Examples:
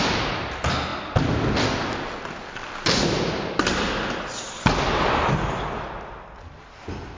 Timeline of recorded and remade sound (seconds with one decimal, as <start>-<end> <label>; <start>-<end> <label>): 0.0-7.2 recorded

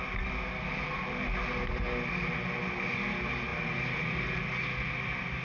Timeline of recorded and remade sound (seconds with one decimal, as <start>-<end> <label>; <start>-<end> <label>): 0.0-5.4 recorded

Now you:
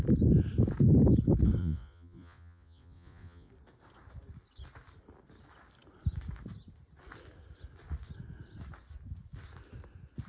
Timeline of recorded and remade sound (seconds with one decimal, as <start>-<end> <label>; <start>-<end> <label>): 0.0-1.6 recorded; 1.6-3.5 remade; 3.5-10.3 recorded

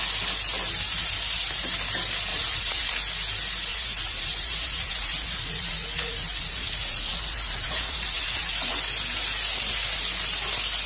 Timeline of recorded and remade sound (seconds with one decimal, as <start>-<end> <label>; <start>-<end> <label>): 0.0-2.3 recorded; 2.3-2.9 remade; 2.9-3.7 recorded; 3.7-8.7 remade; 8.7-10.9 recorded